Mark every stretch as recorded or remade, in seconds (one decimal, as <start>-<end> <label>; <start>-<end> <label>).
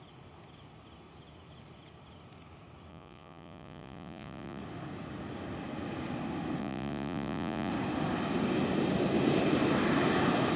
0.0-2.9 recorded; 2.9-4.6 remade; 4.6-6.6 recorded; 6.6-7.7 remade; 7.7-10.6 recorded